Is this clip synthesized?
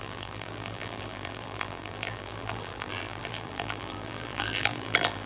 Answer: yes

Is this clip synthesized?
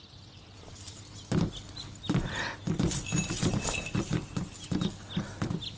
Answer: no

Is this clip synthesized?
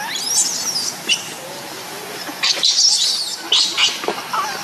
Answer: no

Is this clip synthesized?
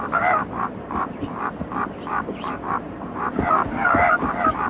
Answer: yes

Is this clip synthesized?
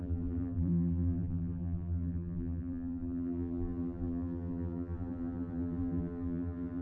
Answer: yes